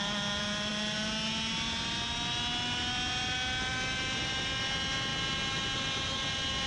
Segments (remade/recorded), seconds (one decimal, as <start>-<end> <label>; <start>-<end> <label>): 0.0-6.7 recorded